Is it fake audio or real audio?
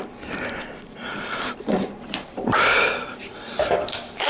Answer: fake